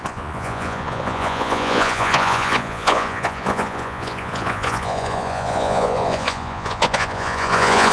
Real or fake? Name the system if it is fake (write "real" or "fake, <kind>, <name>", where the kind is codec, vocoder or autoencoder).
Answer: fake, vocoder, Vocos